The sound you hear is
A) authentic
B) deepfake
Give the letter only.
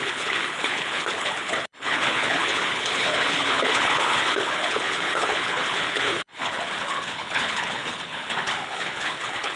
B